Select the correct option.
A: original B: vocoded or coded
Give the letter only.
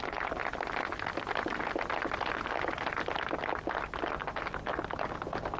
A